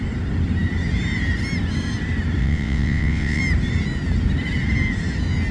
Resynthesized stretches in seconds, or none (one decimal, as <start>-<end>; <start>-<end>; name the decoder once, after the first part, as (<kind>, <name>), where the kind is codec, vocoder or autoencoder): 2.4-3.4 (vocoder, WaveNeXt)